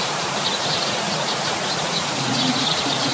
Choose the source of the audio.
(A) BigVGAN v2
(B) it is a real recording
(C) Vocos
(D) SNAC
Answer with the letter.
C